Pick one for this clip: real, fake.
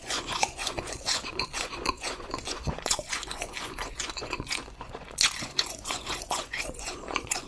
fake